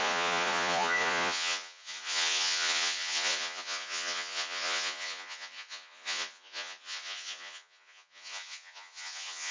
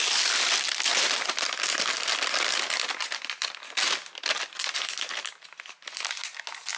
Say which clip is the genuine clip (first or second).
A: second